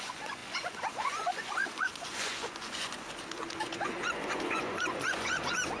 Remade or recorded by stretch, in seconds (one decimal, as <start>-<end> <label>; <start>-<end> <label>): 0.0-5.8 remade